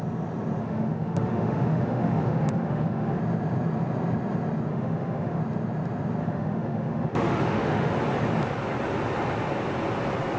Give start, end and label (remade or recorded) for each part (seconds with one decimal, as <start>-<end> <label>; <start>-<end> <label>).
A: 0.0-0.6 recorded; 0.6-3.2 remade; 3.2-4.7 recorded; 4.7-5.4 remade; 5.4-6.2 recorded; 6.2-7.9 remade; 7.9-10.4 recorded